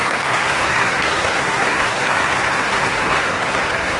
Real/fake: fake